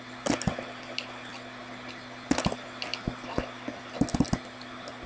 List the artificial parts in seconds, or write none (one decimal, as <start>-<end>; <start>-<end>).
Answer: none